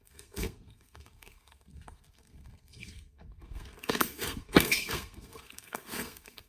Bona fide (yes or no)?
no